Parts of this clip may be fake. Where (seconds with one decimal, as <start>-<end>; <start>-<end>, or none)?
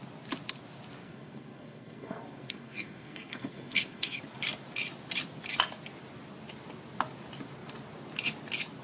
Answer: 1.0-4.2